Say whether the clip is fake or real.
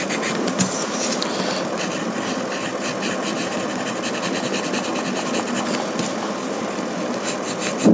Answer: real